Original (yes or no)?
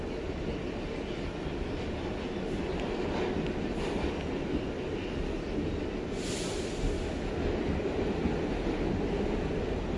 yes